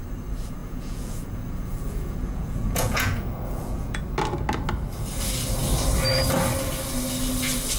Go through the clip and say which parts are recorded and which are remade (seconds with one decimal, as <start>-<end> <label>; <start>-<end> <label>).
0.0-0.6 recorded; 0.6-4.0 remade; 4.0-7.8 recorded